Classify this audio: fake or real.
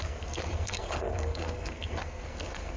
fake